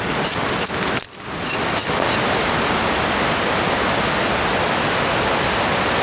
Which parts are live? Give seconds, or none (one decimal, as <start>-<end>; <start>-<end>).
0.0-6.0